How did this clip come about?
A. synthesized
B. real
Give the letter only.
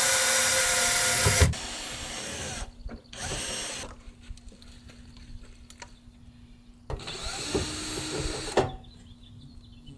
B